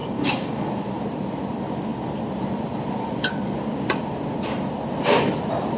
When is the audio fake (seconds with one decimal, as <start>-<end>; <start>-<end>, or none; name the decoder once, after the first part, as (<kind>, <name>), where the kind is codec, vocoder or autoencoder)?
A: 0.0-0.7 (codec, DAC)